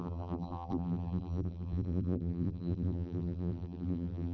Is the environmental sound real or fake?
fake